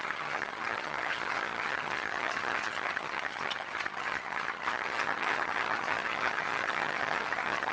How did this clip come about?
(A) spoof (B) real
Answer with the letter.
A